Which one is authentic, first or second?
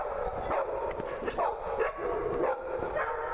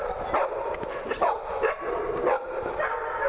first